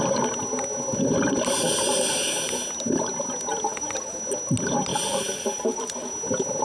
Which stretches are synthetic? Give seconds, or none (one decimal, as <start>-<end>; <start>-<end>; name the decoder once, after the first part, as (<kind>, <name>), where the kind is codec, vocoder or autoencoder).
3.5-4.2 (vocoder, BigVGAN v2); 4.9-6.1